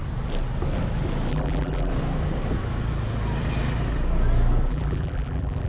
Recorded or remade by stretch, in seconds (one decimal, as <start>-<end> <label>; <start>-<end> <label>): 0.0-1.3 recorded; 1.3-1.9 remade; 1.9-4.7 recorded; 4.7-5.7 remade